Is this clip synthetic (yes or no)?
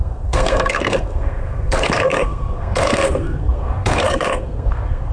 yes